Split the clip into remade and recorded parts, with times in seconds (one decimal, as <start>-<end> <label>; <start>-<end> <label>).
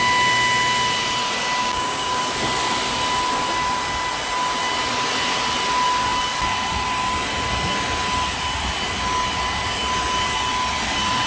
0.0-1.6 recorded; 1.6-2.2 remade; 2.2-11.3 recorded